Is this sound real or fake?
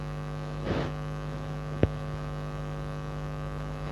fake